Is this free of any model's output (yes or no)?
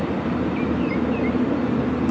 yes